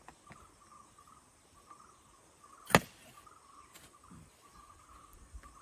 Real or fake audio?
real